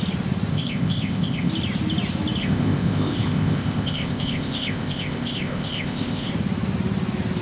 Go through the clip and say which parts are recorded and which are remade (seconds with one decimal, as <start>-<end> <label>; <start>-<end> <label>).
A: 0.0-0.5 recorded; 0.5-1.5 remade; 1.5-2.4 recorded; 2.4-6.3 remade; 6.3-7.4 recorded

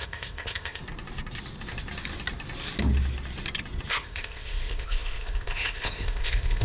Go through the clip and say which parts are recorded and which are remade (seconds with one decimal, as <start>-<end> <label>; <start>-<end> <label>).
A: 0.0-0.8 remade; 0.8-3.9 recorded; 3.9-6.6 remade

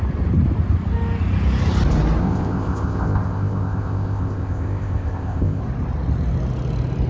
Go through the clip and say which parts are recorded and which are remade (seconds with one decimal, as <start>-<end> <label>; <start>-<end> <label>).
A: 0.0-2.2 recorded; 2.2-5.6 remade; 5.6-7.1 recorded

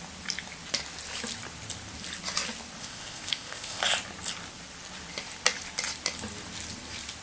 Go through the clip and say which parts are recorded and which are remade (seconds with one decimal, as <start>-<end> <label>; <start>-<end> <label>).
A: 0.0-2.8 recorded; 2.8-3.8 remade; 3.8-7.2 recorded

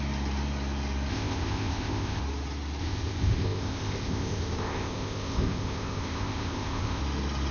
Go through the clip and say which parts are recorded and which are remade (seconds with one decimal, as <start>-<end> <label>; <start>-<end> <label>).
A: 0.0-1.1 recorded; 1.1-2.2 remade; 2.2-2.8 recorded; 2.8-7.0 remade; 7.0-7.5 recorded